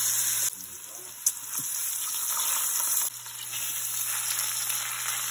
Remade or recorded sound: recorded